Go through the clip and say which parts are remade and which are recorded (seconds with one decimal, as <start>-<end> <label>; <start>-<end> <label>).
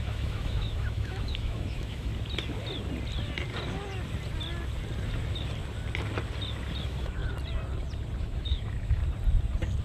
0.0-2.1 remade; 2.1-6.8 recorded; 6.8-7.2 remade; 7.2-8.2 recorded; 8.2-9.0 remade; 9.0-9.8 recorded